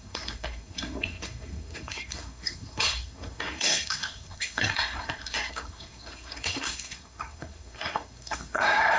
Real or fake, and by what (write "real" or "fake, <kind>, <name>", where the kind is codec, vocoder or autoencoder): fake, codec, SNAC